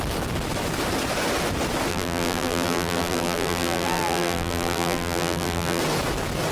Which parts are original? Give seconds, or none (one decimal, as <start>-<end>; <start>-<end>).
0.0-1.9; 5.8-6.5